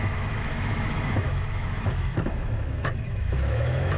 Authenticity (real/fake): fake